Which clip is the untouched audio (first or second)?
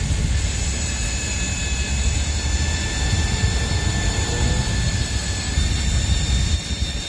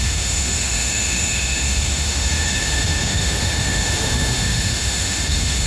first